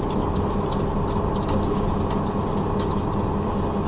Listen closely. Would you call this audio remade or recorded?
recorded